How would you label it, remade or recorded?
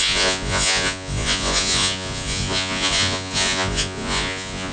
remade